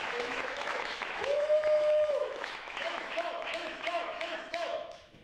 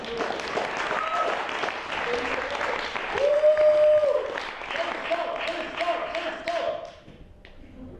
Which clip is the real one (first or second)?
second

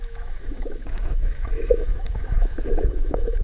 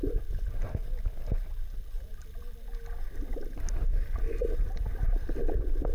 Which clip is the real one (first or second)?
second